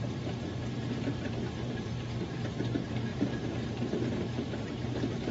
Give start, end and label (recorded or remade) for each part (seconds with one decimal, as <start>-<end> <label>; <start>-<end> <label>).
0.0-1.1 recorded; 1.1-2.6 remade; 2.6-3.1 recorded; 3.1-5.3 remade